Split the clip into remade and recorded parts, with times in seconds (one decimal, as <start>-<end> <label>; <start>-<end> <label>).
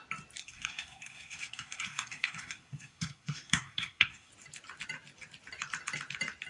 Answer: 0.0-0.4 recorded; 0.4-4.3 remade; 4.3-6.5 recorded